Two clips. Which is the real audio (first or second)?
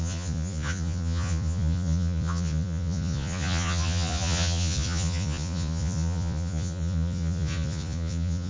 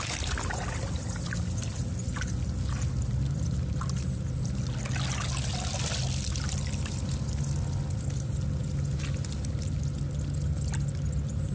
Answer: second